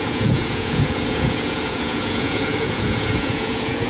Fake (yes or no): yes